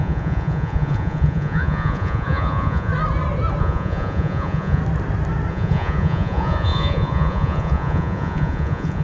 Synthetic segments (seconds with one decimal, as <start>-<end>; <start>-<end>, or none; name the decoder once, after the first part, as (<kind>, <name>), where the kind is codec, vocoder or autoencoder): 0.0-2.9 (vocoder, Vocos); 3.6-4.8; 5.5-9.0